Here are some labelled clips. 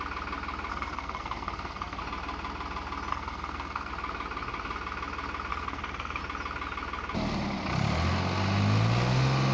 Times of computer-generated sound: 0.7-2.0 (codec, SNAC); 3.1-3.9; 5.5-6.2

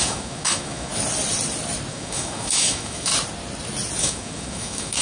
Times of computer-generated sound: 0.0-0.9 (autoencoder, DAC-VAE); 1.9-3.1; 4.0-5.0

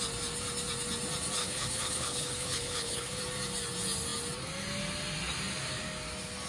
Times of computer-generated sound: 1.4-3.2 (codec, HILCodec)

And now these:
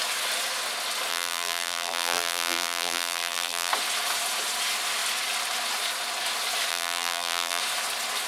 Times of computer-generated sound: 1.1-3.7 (vocoder, BigVGAN v2); 6.7-7.6